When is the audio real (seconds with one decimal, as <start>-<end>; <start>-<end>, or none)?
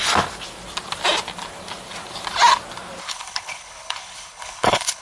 0.0-3.0